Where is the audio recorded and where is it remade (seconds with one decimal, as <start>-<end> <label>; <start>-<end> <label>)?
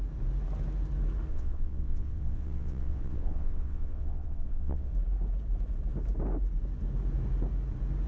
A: 0.0-1.3 recorded; 1.3-4.9 remade; 4.9-8.1 recorded